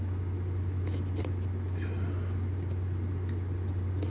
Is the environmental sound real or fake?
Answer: real